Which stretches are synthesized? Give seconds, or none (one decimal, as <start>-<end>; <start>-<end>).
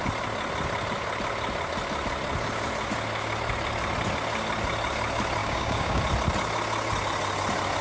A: 5.4-6.0